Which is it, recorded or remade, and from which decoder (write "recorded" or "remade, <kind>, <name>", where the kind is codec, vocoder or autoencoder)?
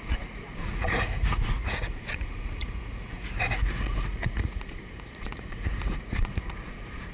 remade, vocoder, Vocos